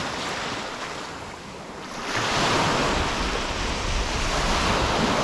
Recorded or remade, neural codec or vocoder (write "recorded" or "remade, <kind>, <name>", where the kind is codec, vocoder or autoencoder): recorded